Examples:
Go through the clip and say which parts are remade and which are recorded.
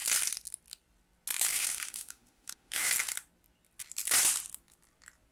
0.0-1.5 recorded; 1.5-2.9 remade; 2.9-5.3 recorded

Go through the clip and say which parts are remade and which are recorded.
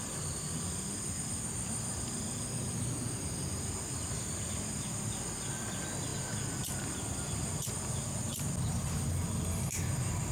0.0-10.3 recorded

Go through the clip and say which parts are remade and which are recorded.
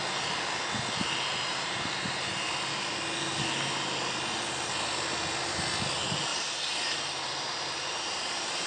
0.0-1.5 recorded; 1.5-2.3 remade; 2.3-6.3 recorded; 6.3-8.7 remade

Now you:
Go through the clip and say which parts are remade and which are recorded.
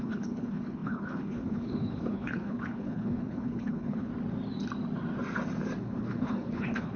0.0-4.1 remade; 4.1-5.8 recorded; 5.8-7.0 remade